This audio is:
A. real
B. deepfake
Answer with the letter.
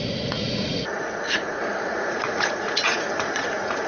B